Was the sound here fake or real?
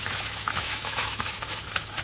fake